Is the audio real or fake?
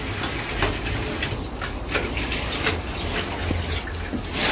real